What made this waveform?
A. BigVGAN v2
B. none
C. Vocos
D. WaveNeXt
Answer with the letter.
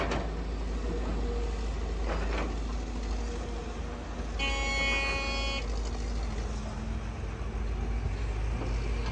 B